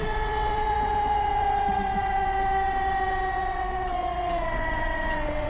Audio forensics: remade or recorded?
remade